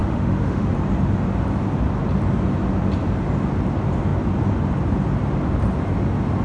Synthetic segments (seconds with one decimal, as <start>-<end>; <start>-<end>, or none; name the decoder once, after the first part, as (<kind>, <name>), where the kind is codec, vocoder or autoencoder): 0.0-0.7 (autoencoder, DAC-VAE)